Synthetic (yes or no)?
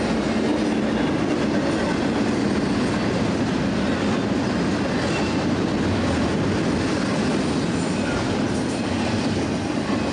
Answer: no